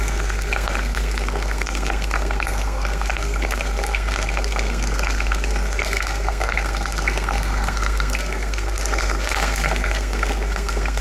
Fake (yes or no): yes